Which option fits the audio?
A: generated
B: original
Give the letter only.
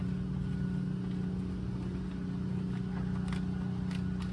B